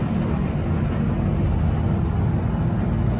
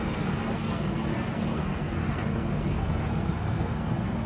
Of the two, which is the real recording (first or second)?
first